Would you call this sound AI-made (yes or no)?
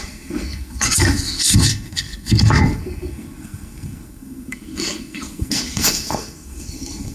yes